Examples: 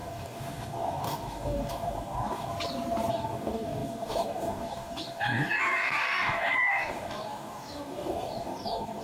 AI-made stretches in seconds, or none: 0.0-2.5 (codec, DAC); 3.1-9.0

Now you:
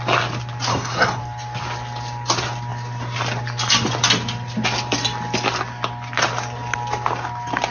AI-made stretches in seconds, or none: 0.7-1.2 (codec, SNAC)

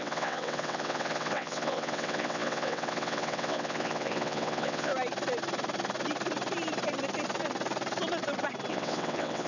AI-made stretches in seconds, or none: 0.0-4.9 (vocoder, WaveNeXt); 8.7-9.5

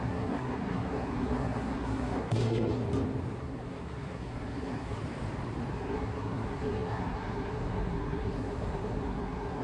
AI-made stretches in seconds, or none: 0.0-2.8 (codec, SNAC); 3.4-5.0; 5.7-9.6

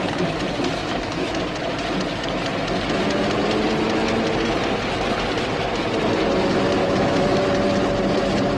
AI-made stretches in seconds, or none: 0.8-1.4 (autoencoder, DAC-VAE); 6.8-7.4

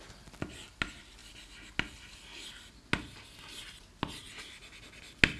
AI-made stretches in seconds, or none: none

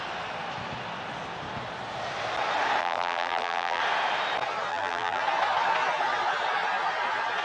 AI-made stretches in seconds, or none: 2.8-3.8 (vocoder, BigVGAN v2); 4.7-5.2